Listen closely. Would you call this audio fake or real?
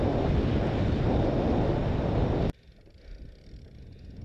real